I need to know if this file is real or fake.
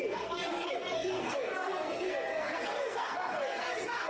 fake